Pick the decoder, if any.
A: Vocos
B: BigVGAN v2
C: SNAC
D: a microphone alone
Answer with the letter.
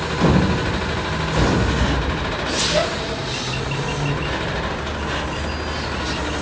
D